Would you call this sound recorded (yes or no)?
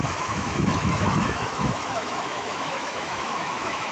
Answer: no